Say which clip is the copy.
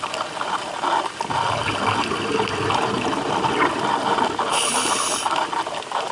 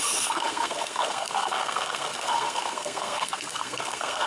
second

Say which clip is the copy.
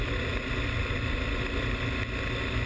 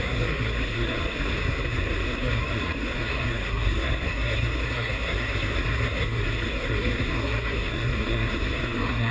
second